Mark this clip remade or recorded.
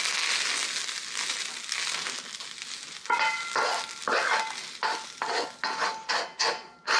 recorded